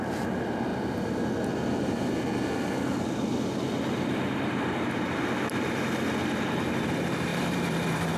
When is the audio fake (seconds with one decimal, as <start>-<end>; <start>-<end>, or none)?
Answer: 0.7-1.2; 7.3-8.2